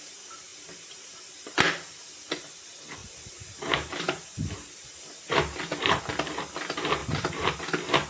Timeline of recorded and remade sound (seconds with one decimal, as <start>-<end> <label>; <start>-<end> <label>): 0.0-0.5 recorded; 0.5-1.1 remade; 1.1-3.0 recorded; 3.0-6.0 remade; 6.0-7.0 recorded; 7.0-7.6 remade; 7.6-8.1 recorded